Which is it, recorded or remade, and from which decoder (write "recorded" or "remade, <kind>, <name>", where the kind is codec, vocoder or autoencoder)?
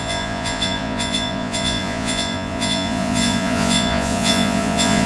remade, vocoder, Vocos